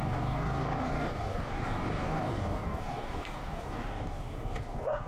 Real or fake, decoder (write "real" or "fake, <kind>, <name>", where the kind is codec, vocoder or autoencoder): fake, codec, DAC